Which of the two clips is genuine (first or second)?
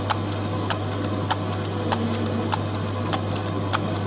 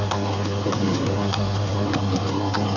first